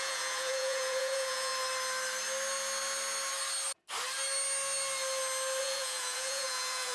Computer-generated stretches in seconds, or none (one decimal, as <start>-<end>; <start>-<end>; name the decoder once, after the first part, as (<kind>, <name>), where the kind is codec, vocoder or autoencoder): 0.0-1.5 (vocoder, Vocos); 5.6-6.9